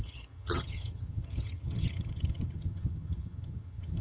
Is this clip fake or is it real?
fake